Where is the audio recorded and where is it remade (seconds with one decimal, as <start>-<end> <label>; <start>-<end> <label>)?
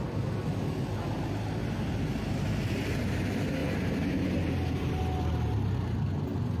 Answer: 0.0-1.6 recorded; 1.6-3.2 remade; 3.2-3.6 recorded; 3.6-5.0 remade; 5.0-6.6 recorded